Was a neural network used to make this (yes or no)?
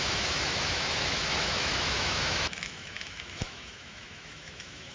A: yes